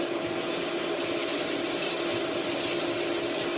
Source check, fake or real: real